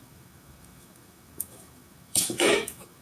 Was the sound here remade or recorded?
remade